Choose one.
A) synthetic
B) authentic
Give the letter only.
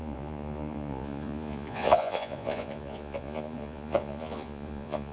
A